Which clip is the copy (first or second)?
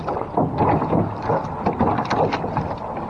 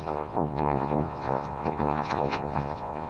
second